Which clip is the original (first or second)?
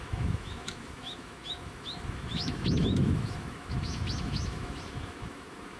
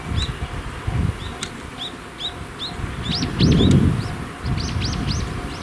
second